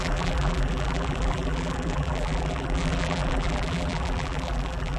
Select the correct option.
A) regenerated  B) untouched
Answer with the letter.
A